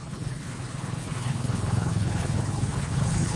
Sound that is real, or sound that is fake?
fake